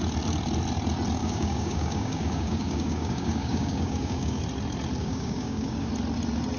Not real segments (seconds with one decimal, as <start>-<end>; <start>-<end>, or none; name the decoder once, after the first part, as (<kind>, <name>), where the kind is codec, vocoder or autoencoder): 1.2-4.4 (codec, DAC); 5.0-5.9